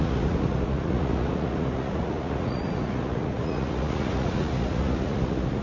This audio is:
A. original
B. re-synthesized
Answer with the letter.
B